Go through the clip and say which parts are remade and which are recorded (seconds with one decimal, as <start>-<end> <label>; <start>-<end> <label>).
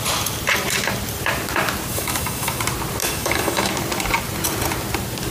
0.0-1.9 recorded; 1.9-2.6 remade; 2.6-3.0 recorded; 3.0-3.7 remade; 3.7-5.3 recorded